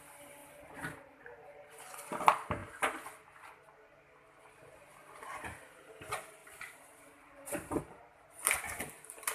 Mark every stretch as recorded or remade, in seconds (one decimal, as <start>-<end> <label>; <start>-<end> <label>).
0.0-0.4 recorded; 0.4-1.8 remade; 1.8-6.4 recorded; 6.4-7.8 remade; 7.8-9.3 recorded